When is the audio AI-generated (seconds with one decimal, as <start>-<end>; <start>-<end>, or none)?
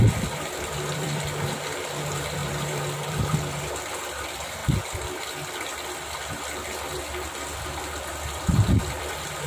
0.0-4.6; 7.0-9.5